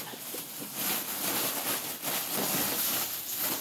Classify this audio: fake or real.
real